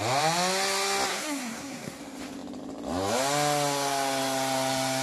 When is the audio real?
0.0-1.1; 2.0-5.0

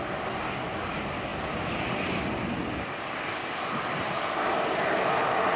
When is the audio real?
0.0-5.6

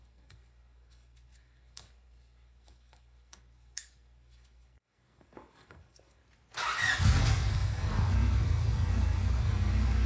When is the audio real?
6.2-7.0

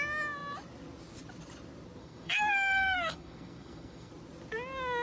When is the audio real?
0.0-2.0; 4.1-5.0

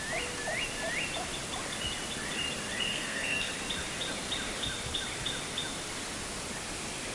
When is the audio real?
0.0-2.9; 3.5-7.1

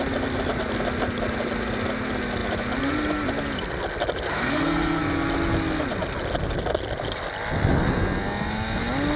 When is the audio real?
0.0-4.3; 5.0-9.2